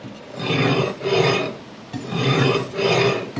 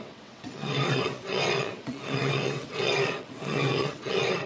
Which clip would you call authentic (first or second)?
first